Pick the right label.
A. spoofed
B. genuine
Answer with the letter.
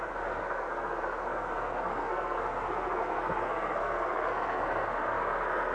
A